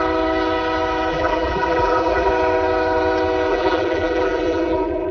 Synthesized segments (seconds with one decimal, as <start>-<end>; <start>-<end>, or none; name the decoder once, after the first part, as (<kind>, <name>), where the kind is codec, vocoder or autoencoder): 1.1-2.3 (vocoder, BigVGAN v2); 3.5-5.1